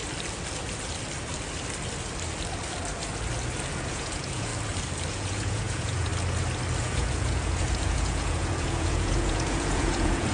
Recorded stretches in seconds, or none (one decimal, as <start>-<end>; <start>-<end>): 0.0-3.7; 4.5-5.1; 6.1-6.8